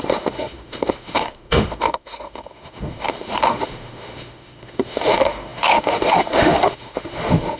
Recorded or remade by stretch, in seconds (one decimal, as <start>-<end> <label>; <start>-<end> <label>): 0.0-7.6 remade